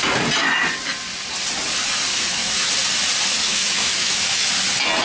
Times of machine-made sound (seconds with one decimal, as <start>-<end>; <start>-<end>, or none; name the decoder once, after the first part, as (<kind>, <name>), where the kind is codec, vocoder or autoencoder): 2.1-2.7 (autoencoder, DAC-VAE); 3.4-4.5

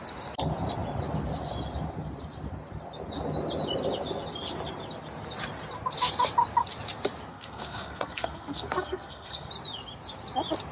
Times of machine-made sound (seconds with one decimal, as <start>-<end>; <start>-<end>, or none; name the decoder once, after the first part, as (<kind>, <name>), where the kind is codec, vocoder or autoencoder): 7.3-9.5 (codec, SNAC)